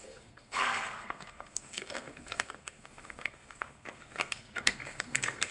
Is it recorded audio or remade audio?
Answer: remade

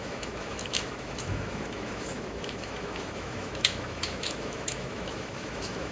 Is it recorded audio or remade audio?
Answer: remade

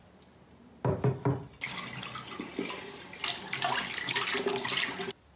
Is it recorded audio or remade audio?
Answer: recorded